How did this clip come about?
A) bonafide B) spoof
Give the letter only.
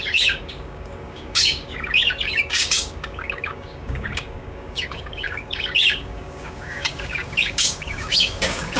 B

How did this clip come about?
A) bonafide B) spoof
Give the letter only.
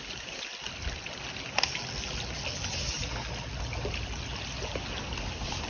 A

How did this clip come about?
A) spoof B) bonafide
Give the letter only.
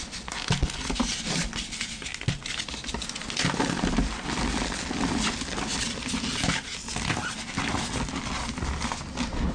B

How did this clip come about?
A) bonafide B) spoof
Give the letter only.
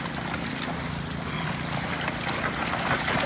A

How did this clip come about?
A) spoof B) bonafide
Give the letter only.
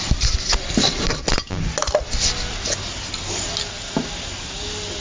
B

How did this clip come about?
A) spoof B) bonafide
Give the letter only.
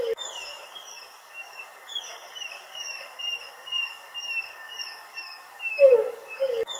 A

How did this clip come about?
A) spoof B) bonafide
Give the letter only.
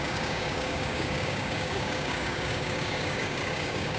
A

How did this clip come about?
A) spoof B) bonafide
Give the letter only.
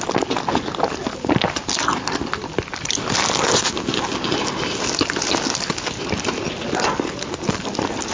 B